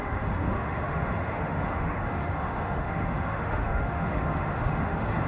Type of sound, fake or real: fake